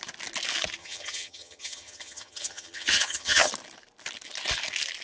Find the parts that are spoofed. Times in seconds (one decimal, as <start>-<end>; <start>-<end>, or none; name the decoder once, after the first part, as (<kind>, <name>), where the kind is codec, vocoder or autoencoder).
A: 0.8-3.5 (vocoder, HiFi-GAN)